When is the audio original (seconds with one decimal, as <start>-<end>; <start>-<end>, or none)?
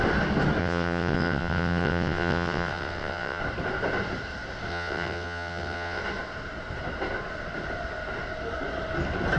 0.0-0.6; 3.4-4.7; 6.0-9.4